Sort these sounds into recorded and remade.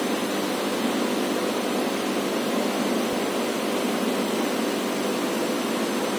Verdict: recorded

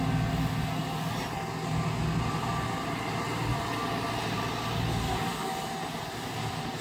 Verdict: recorded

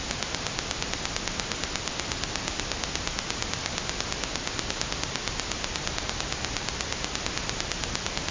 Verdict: recorded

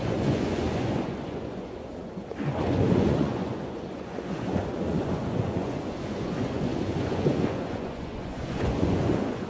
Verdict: remade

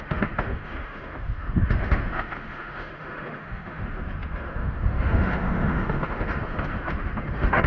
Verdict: remade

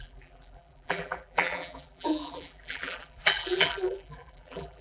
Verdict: remade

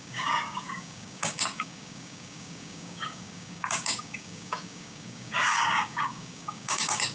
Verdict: remade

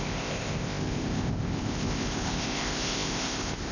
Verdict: remade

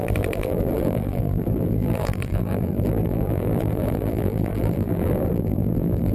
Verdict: remade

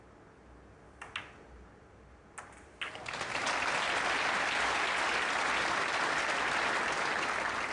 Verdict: recorded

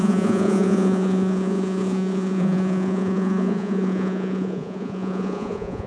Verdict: remade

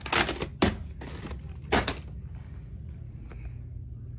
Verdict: recorded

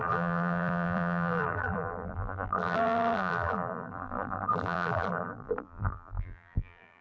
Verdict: remade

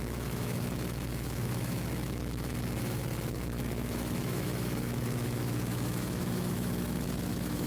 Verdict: remade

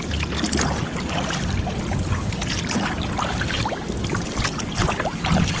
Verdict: recorded